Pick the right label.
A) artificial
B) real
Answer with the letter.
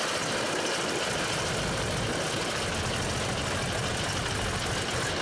B